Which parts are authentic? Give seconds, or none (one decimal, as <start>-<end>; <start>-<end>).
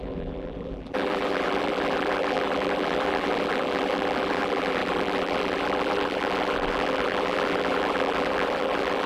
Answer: none